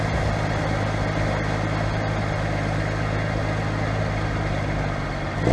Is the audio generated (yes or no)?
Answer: no